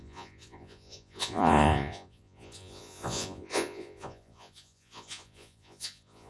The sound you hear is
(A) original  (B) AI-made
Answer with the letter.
B